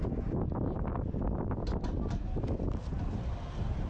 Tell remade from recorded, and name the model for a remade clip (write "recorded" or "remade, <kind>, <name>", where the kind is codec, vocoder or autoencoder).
recorded